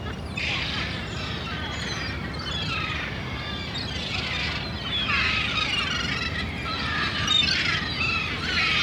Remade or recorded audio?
recorded